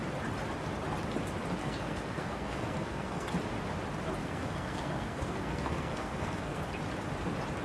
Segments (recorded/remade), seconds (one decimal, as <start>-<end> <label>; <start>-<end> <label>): 0.0-1.6 recorded; 1.6-3.3 remade; 3.3-4.2 recorded; 4.2-6.6 remade; 6.6-7.6 recorded